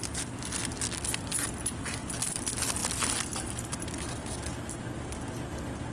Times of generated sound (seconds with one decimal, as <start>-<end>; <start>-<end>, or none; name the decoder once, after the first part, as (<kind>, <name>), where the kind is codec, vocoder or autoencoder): none